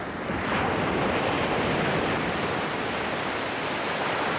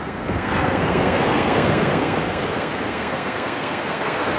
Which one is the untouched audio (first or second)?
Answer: first